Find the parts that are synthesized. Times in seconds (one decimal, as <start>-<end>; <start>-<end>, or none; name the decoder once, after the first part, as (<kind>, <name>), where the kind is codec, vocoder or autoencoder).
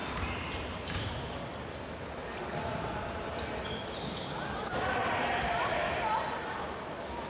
0.0-1.1 (vocoder, BigVGAN v2)